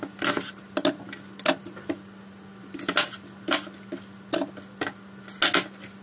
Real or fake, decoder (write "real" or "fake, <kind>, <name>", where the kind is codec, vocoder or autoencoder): real